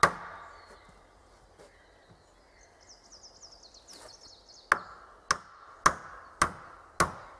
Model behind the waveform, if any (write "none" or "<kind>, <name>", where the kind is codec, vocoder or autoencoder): none